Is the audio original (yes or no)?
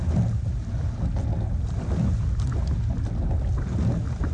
yes